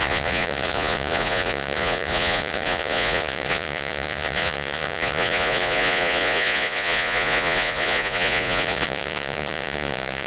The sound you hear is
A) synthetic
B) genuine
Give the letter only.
A